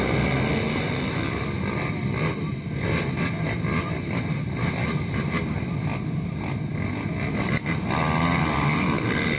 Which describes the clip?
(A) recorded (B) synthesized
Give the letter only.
A